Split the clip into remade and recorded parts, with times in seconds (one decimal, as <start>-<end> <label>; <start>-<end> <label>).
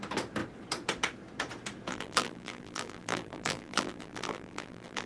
0.0-1.9 recorded; 1.9-5.1 remade